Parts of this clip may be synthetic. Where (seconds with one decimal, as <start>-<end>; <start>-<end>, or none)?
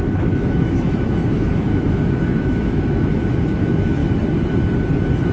0.0-4.0